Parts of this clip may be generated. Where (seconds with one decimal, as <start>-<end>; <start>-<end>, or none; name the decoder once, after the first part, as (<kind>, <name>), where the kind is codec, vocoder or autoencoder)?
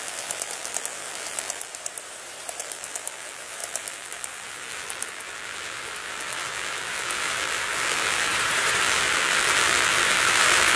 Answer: 0.0-1.7 (vocoder, BigVGAN v2); 2.6-8.3; 8.8-10.8